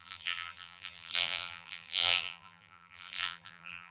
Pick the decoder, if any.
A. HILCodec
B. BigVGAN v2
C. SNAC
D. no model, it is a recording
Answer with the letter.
B